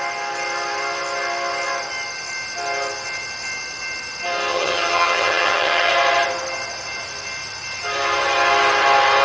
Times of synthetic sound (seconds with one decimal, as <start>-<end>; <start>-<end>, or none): 4.5-5.9